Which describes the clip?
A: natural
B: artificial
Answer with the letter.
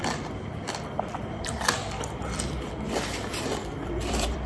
B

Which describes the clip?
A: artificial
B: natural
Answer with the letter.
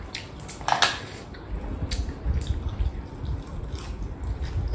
B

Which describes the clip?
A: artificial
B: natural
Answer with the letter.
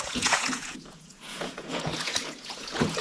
A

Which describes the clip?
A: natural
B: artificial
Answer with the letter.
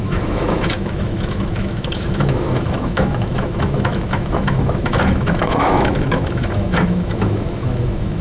B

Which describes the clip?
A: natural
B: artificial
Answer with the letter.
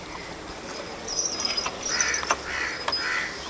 A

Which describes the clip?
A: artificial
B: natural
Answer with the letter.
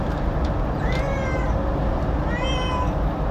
B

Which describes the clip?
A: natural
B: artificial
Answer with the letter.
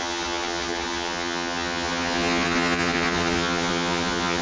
B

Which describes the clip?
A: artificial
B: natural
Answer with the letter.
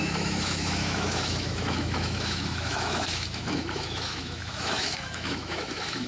A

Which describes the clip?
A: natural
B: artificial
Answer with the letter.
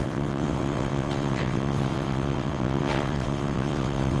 B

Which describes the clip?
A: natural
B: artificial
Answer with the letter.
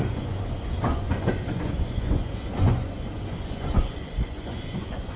B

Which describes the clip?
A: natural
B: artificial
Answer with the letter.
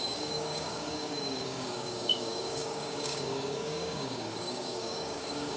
B